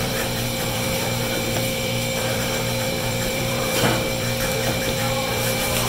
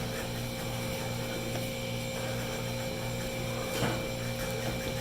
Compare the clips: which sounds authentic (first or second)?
second